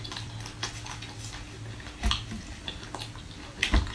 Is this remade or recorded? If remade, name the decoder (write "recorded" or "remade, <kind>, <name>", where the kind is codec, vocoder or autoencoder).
recorded